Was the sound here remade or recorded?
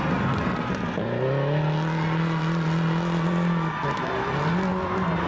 recorded